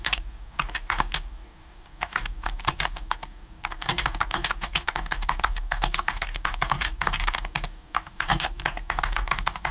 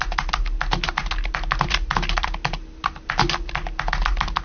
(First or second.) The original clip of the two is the second